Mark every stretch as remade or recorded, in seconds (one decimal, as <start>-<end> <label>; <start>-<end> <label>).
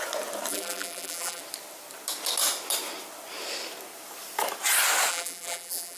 0.0-0.5 recorded; 0.5-1.4 remade; 1.4-5.1 recorded; 5.1-6.0 remade